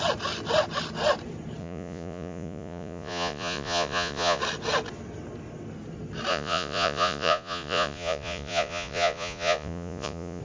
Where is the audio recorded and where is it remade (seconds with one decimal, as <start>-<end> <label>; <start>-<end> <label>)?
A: 0.0-1.6 recorded; 1.6-4.4 remade; 4.4-6.3 recorded; 6.3-10.4 remade